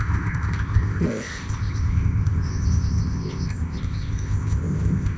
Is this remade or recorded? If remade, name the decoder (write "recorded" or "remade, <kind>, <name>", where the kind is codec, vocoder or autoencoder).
remade, codec, ZipCodec